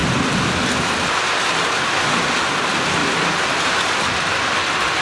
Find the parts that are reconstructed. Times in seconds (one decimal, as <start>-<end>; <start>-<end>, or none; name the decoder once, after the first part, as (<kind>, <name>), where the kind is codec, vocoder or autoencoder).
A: none

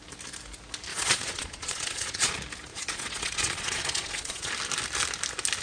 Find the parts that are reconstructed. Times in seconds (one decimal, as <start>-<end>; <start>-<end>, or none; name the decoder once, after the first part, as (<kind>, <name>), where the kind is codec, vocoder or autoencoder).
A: 0.9-2.3 (vocoder, Vocos); 2.7-4.5

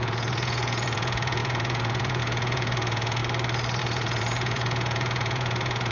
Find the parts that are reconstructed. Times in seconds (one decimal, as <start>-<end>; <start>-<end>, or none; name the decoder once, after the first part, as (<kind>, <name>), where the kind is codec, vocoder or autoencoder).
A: 0.0-3.2 (vocoder, Vocos); 3.8-5.9